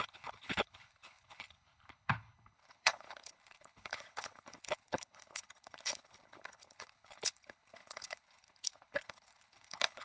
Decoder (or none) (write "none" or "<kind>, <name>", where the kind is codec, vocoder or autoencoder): codec, HILCodec